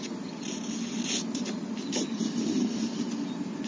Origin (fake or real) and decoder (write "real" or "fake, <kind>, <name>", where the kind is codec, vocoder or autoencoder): real